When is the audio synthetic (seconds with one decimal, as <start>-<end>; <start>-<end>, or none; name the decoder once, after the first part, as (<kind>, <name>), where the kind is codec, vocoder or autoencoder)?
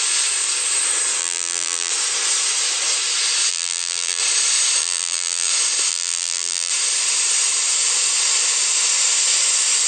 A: 1.2-1.9 (vocoder, BigVGAN v2); 3.5-4.2; 4.8-5.5; 5.9-6.7